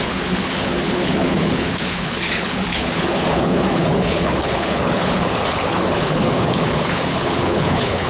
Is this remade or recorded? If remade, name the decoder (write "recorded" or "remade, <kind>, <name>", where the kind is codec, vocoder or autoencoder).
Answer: remade, codec, HILCodec